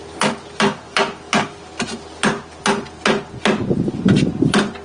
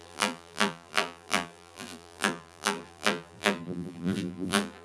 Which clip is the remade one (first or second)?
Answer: second